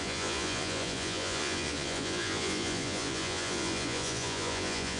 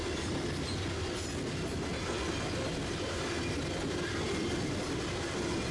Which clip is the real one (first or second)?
second